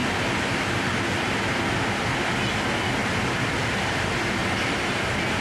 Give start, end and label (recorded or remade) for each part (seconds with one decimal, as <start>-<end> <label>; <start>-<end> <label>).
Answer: 0.0-1.3 remade; 1.3-3.0 recorded; 3.0-4.5 remade; 4.5-5.4 recorded